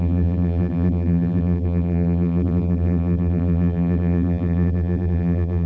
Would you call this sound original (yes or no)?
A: no